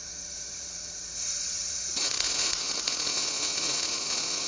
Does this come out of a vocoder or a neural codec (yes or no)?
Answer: yes